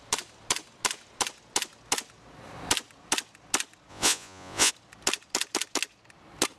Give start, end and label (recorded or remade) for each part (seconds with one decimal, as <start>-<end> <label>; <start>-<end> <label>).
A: 0.0-3.9 recorded; 3.9-4.7 remade; 4.7-6.6 recorded

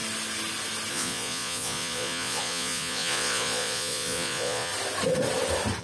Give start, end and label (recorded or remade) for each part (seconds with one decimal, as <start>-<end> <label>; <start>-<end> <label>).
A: 0.0-0.9 recorded; 0.9-4.7 remade; 4.7-5.8 recorded

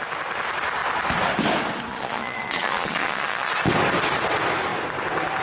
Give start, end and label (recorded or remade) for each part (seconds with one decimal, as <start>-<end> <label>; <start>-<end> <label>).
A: 0.0-1.9 recorded; 1.9-3.5 remade; 3.5-5.4 recorded

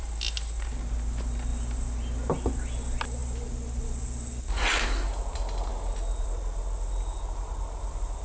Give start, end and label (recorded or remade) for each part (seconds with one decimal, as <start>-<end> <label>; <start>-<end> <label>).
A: 0.0-8.2 recorded

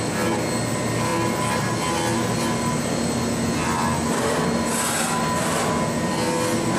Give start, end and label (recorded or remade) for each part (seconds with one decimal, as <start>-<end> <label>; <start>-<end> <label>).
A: 0.0-6.8 recorded

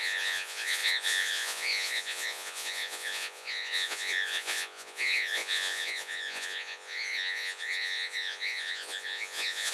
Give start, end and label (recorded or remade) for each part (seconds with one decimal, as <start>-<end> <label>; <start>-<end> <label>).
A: 0.0-9.7 remade